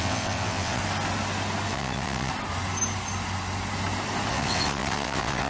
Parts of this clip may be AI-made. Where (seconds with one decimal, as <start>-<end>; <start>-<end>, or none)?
0.0-0.8; 1.7-2.3; 4.3-5.5